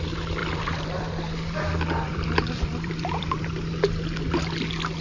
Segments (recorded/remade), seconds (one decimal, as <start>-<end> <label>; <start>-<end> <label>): 0.0-0.4 recorded; 0.4-3.4 remade; 3.4-5.0 recorded